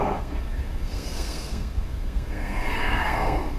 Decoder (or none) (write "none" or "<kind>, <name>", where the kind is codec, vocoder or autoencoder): codec, SNAC